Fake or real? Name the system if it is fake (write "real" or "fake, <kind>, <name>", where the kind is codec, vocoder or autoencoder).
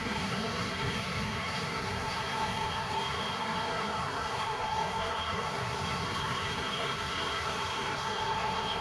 fake, codec, SNAC